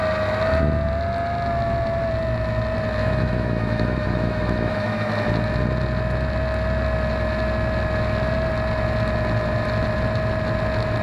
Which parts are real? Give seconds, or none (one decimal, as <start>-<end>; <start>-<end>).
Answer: 0.0-3.0; 5.1-11.0